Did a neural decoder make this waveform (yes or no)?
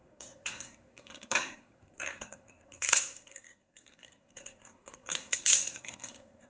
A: yes